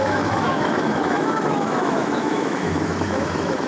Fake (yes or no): yes